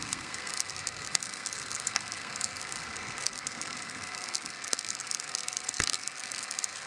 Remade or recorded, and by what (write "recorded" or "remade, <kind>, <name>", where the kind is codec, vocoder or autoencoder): remade, codec, SNAC